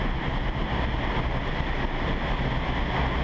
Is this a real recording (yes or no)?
yes